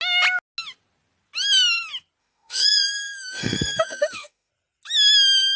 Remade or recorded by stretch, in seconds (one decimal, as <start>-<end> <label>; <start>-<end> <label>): 0.0-2.2 recorded; 2.2-4.5 remade; 4.5-5.6 recorded

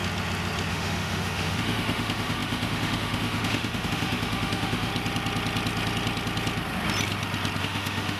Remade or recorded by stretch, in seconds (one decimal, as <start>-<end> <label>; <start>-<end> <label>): 0.0-0.7 recorded; 0.7-4.9 remade; 4.9-7.6 recorded; 7.6-8.2 remade

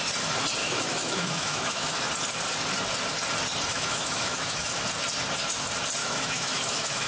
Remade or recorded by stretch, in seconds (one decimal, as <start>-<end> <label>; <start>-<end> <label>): 0.0-0.6 recorded; 0.6-2.1 remade; 2.1-3.7 recorded; 3.7-4.8 remade; 4.8-6.0 recorded; 6.0-7.1 remade